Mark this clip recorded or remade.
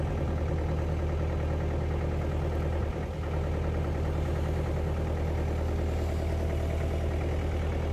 recorded